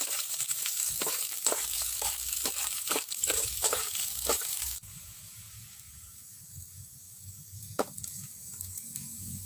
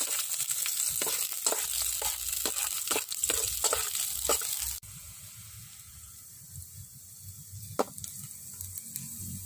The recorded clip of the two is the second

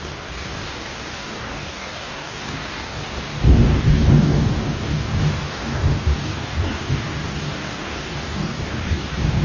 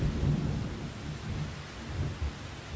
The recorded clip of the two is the second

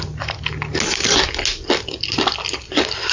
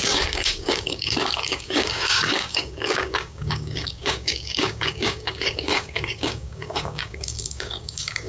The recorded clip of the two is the first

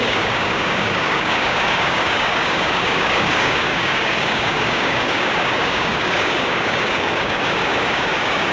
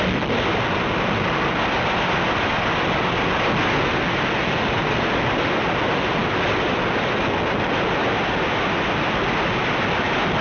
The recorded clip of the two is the second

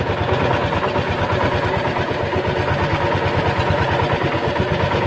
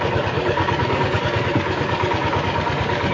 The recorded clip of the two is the first